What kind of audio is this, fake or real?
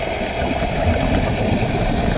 real